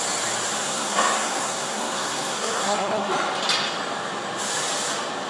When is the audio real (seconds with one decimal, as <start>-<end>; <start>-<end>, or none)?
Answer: 0.0-0.6; 3.1-5.3